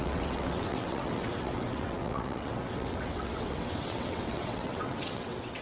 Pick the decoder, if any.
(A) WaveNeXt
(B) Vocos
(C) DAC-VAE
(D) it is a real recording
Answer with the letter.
A